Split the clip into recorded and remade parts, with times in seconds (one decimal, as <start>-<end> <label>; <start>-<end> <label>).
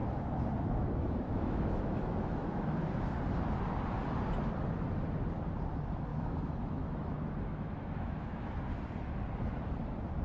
0.0-3.2 remade; 3.2-6.1 recorded; 6.1-8.6 remade; 8.6-10.2 recorded